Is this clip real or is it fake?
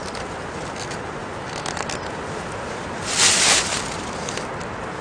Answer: real